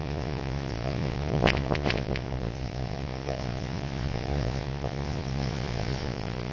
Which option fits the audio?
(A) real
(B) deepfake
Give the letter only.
B